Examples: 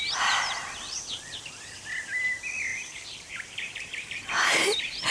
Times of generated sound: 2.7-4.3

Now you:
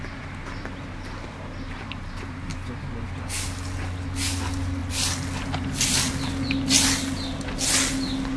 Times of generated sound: none

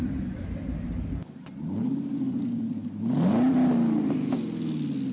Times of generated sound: none